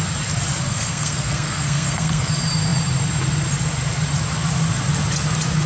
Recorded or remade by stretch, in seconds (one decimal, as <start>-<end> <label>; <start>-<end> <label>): 0.0-0.7 recorded; 0.7-2.3 remade; 2.3-5.7 recorded